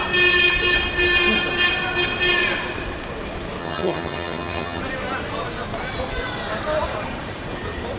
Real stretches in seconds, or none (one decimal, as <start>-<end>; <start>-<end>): 0.0-3.6; 4.8-8.0